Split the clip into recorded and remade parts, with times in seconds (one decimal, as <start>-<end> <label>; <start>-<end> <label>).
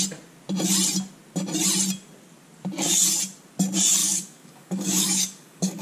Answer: 0.0-4.0 recorded; 4.0-5.8 remade